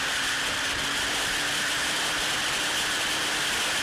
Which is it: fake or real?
fake